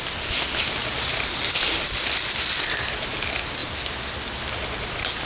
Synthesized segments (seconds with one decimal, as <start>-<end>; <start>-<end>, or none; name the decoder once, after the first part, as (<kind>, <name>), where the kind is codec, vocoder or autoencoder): none